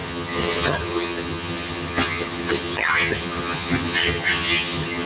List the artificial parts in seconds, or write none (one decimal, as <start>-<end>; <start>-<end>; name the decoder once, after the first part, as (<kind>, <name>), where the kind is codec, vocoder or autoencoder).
0.0-5.1 (vocoder, HiFi-GAN)